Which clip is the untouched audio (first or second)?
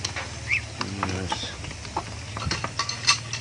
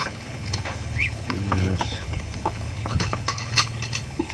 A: first